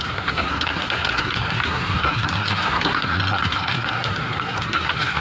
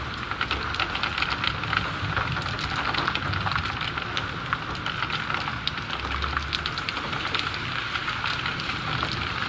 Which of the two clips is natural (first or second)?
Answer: second